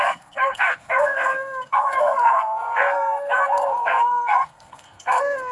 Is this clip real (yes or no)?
no